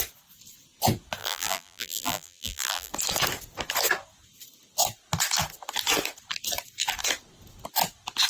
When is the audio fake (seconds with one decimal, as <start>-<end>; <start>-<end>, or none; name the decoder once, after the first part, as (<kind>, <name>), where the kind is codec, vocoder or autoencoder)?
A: 1.2-2.9 (vocoder, BigVGAN v2)